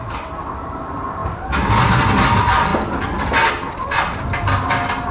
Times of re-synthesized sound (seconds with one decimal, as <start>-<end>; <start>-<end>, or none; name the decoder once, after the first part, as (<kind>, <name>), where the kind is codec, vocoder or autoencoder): none